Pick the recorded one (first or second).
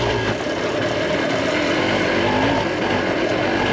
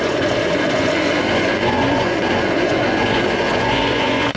first